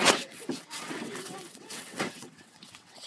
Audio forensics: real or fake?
fake